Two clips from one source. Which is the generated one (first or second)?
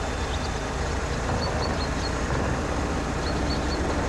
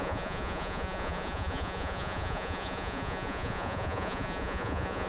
second